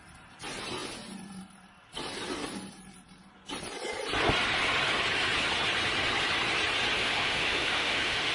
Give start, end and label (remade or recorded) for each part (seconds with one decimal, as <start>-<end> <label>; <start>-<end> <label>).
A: 0.0-7.0 recorded; 7.0-8.3 remade